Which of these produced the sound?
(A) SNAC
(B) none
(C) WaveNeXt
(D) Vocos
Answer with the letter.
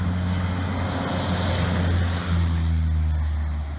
B